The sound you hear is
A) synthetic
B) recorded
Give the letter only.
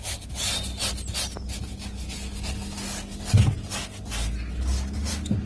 B